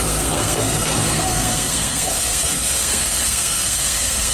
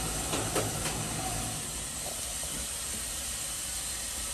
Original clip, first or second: second